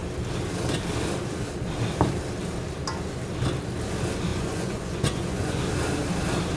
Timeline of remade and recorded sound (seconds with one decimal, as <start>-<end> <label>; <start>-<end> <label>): 0.0-4.3 recorded; 4.3-5.6 remade; 5.6-6.6 recorded